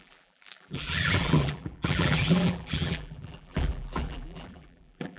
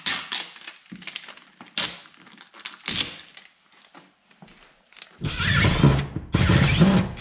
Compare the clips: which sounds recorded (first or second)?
second